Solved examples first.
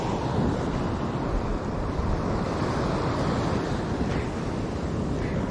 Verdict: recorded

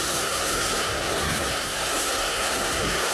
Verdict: remade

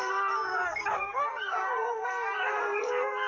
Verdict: remade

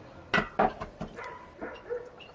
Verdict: recorded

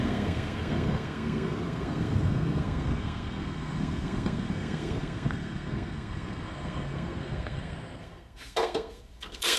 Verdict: remade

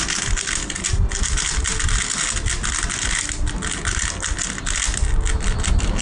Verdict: recorded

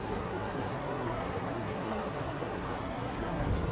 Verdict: remade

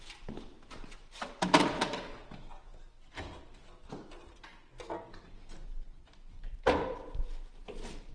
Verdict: recorded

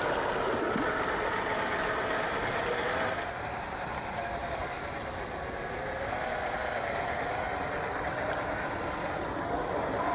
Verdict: recorded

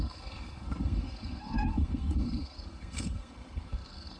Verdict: remade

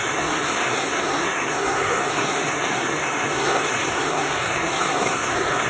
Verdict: remade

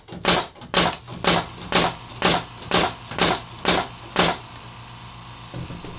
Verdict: recorded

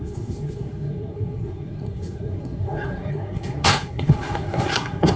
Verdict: remade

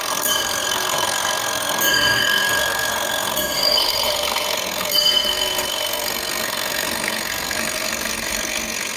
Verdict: remade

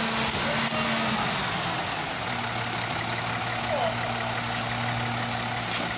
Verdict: recorded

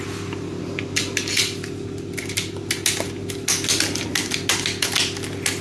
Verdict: recorded